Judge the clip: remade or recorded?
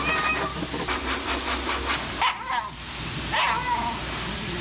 recorded